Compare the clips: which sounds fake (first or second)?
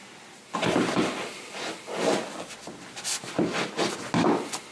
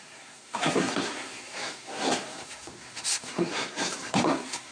second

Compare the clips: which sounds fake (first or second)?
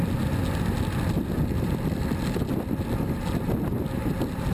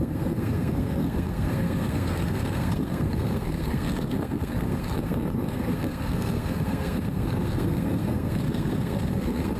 second